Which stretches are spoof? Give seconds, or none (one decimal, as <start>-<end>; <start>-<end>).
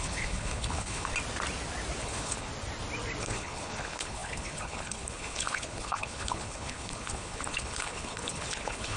0.0-1.1; 2.0-2.5; 3.2-9.0